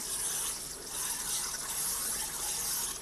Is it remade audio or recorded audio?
recorded